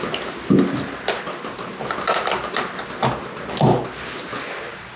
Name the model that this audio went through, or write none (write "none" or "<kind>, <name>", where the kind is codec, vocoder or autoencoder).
none